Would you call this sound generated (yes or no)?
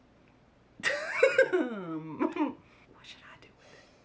no